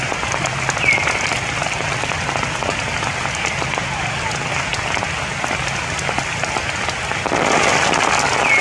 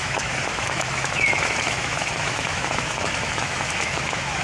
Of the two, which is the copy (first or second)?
second